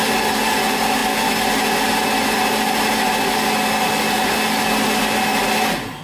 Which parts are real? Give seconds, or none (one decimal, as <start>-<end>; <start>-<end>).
0.0-6.0